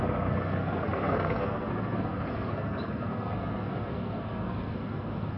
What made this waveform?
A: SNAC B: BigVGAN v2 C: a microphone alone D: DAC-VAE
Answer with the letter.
A